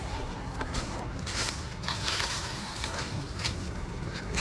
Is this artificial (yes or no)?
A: yes